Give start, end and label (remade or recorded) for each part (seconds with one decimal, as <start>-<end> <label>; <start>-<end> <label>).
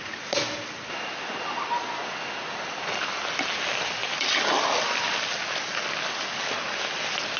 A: 0.0-7.4 recorded